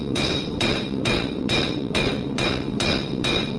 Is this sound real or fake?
fake